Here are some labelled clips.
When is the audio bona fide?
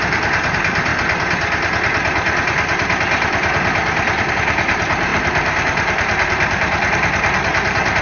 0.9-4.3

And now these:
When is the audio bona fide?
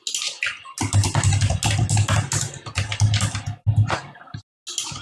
0.0-5.0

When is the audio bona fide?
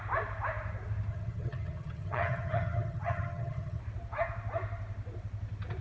0.0-1.1; 3.8-5.8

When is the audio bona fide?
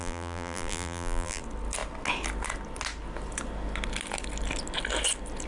1.4-5.5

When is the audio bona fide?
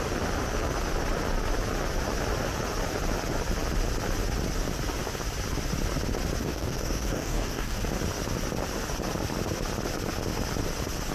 0.0-6.4; 7.8-11.1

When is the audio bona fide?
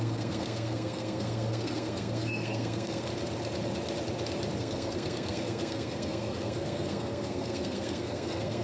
3.1-4.6